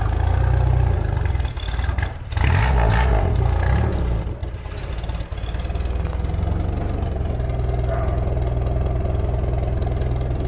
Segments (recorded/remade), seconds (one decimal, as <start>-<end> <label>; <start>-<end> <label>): 0.0-10.5 recorded